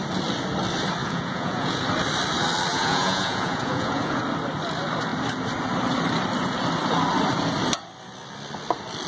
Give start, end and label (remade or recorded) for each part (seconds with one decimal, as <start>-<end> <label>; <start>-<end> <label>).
0.0-1.0 recorded; 1.0-1.8 remade; 1.8-2.7 recorded; 2.7-4.2 remade; 4.2-9.1 recorded